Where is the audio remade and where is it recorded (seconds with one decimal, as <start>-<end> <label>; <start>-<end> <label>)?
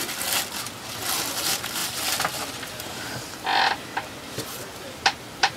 0.0-1.8 recorded; 1.8-5.6 remade